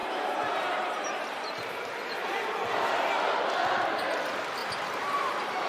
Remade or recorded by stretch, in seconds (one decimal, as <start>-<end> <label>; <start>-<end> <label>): 0.0-2.6 remade; 2.6-4.6 recorded; 4.6-5.7 remade